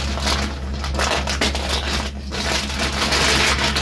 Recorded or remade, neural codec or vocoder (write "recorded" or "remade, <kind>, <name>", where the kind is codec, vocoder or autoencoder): recorded